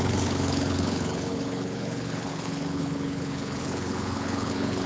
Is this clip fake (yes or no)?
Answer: yes